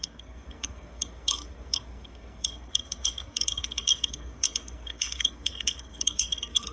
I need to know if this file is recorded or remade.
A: remade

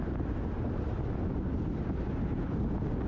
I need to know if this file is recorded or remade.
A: recorded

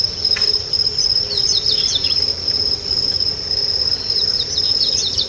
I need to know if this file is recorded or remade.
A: recorded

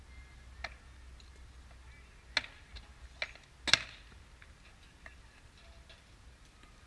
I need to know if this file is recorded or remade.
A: recorded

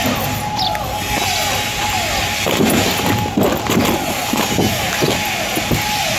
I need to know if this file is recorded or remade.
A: recorded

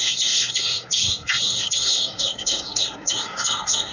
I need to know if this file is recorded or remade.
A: remade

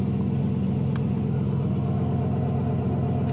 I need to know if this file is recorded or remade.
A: recorded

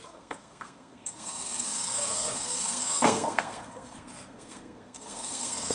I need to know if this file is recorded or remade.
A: remade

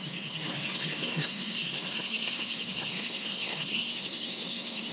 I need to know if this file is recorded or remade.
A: remade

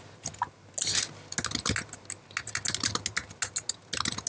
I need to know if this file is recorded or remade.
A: recorded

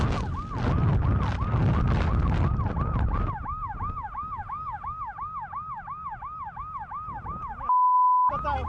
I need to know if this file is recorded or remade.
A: recorded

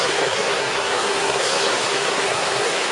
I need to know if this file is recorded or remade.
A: remade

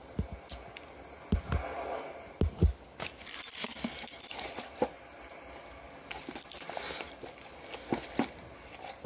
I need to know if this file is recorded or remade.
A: recorded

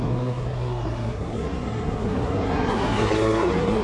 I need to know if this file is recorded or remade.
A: remade